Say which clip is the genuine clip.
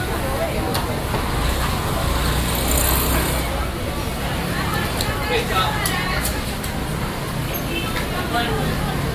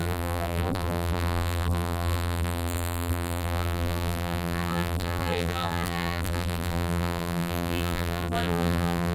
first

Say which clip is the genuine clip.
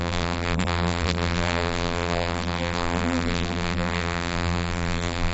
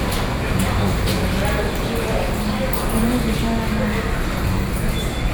second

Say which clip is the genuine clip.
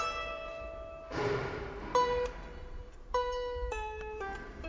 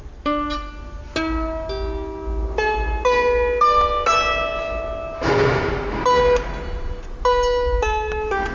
second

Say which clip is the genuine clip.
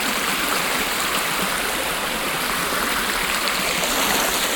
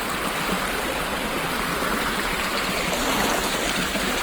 second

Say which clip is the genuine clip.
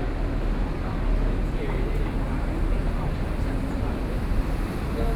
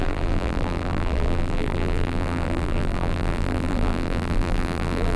first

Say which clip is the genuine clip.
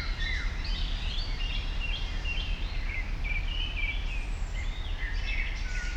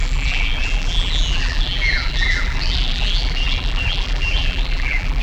first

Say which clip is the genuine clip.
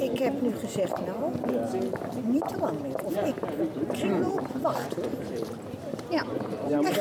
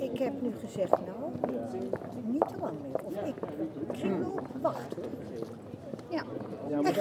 second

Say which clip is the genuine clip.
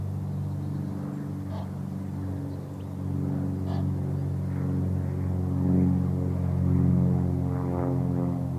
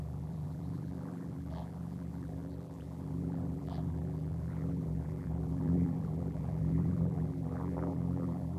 first